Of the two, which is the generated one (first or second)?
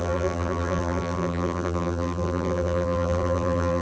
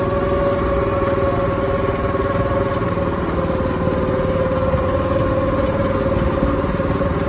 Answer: first